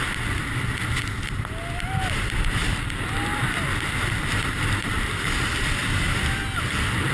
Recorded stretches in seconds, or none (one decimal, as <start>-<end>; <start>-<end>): 0.0-2.6; 6.4-7.1